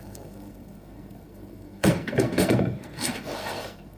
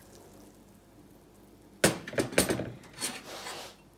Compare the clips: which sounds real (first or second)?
second